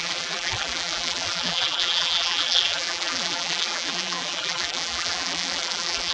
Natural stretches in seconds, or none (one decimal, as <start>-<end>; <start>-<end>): none